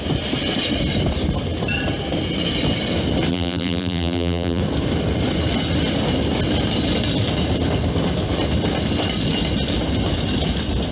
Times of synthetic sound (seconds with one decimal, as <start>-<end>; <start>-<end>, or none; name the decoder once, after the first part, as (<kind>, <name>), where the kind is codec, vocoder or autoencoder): 3.3-4.6 (vocoder, BigVGAN v2)